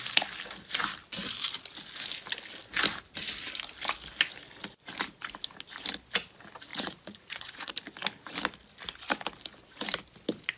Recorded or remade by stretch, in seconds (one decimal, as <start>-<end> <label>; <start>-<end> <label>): 0.0-6.7 recorded; 6.7-7.7 remade; 7.7-10.6 recorded